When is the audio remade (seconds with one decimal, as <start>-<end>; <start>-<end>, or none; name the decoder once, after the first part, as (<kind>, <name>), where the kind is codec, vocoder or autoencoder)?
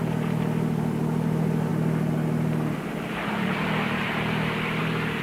none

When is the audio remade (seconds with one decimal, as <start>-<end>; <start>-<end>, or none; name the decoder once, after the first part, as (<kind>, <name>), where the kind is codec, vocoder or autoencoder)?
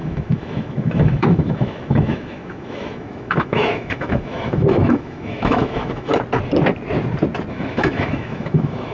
0.0-6.1 (autoencoder, DAC-VAE); 7.5-8.9